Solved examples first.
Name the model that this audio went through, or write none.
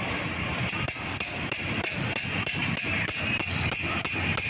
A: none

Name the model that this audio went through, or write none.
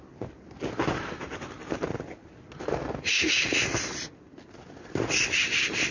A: none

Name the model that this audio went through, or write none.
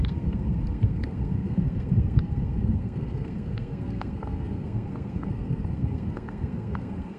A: codec, SNAC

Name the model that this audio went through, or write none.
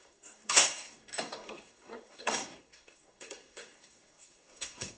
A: codec, SNAC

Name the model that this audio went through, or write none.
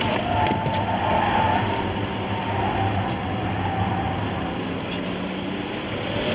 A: none